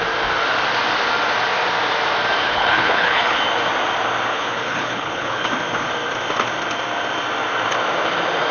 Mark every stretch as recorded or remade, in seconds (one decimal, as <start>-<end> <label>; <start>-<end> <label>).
0.0-2.4 recorded; 2.4-3.4 remade; 3.4-4.3 recorded; 4.3-5.5 remade; 5.5-8.5 recorded